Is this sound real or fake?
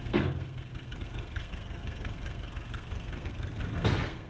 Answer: fake